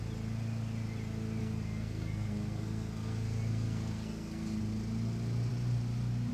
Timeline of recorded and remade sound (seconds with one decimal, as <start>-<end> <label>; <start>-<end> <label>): 0.0-1.4 recorded; 1.4-4.6 remade; 4.6-6.3 recorded